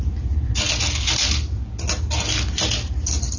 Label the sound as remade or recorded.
recorded